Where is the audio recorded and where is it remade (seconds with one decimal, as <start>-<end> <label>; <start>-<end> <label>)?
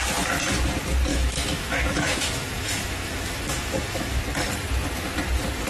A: 0.0-1.1 recorded; 1.1-4.2 remade; 4.2-5.7 recorded